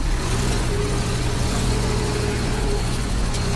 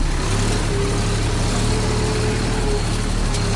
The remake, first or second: first